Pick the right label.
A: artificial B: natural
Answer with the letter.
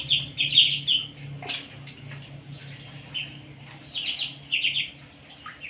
B